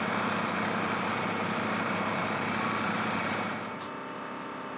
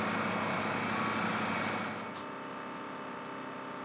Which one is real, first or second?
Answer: second